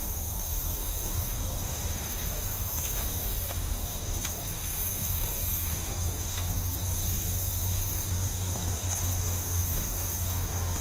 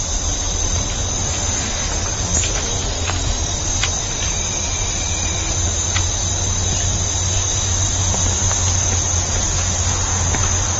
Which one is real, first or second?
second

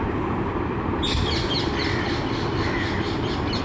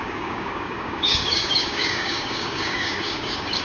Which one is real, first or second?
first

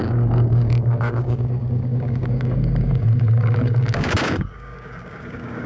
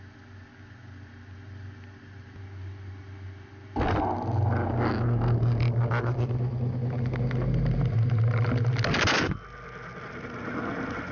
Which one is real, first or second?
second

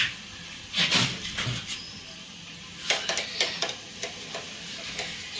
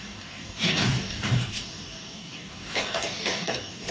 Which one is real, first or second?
first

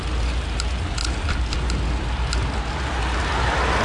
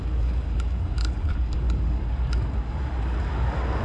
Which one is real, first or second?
first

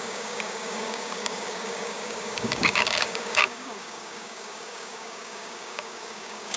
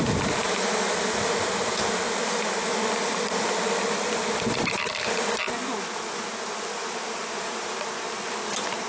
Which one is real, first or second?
second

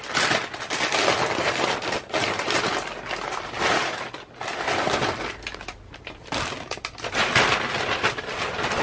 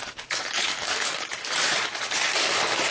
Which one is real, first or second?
first